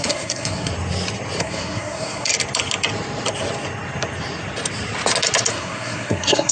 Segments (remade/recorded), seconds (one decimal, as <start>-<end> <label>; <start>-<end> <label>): 0.0-0.7 remade; 0.7-1.4 recorded; 1.4-2.3 remade; 2.3-5.5 recorded; 5.5-6.5 remade